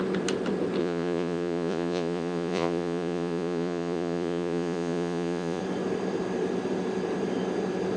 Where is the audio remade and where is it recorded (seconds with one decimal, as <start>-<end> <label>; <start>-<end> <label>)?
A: 0.0-0.8 recorded; 0.8-5.6 remade; 5.6-8.0 recorded